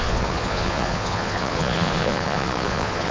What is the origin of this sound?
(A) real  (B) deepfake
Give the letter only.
B